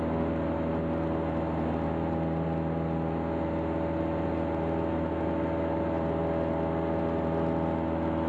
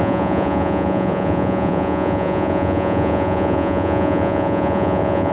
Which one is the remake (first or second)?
second